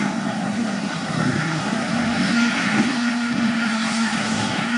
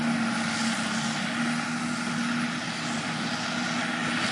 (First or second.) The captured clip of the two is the second